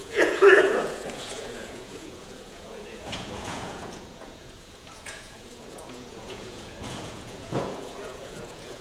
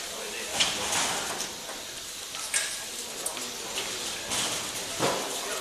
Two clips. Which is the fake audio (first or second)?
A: first